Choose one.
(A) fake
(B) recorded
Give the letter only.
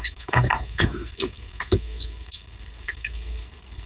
A